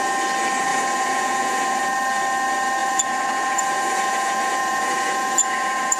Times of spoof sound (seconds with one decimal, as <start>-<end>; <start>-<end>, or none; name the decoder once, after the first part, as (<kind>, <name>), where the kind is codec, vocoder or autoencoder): 0.7-1.8 (vocoder, Vocos); 2.8-6.0